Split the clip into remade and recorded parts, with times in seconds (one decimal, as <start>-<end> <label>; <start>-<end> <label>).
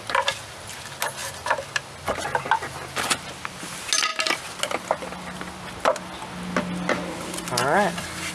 0.0-8.3 recorded